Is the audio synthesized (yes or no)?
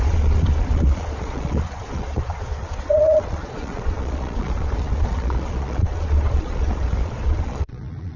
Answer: yes